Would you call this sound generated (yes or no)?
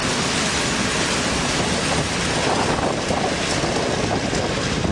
no